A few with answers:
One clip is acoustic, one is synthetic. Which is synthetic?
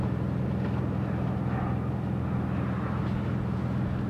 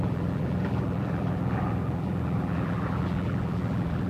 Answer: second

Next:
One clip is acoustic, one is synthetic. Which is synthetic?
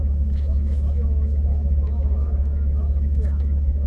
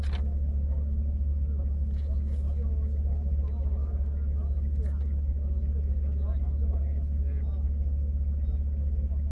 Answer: first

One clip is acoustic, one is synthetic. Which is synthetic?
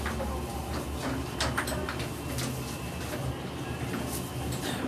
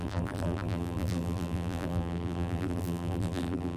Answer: second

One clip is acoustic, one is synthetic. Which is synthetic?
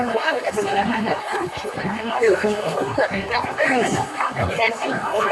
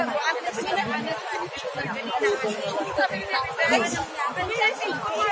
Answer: first